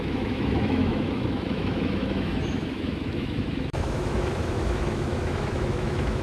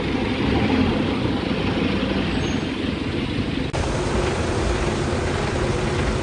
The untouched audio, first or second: second